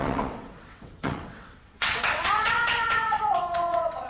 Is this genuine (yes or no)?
no